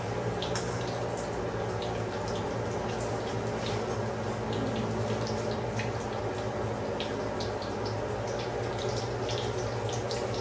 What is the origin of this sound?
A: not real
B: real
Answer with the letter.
B